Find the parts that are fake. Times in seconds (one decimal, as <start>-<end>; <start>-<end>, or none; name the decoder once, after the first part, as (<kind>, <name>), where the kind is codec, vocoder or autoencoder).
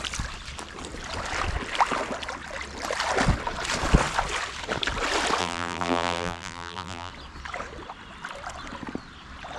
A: 5.4-7.1 (vocoder, BigVGAN v2)